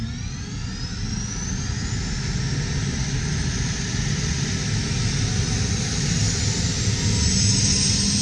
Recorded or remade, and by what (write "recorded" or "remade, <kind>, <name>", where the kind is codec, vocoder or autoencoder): recorded